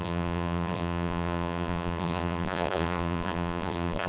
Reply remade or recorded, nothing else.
remade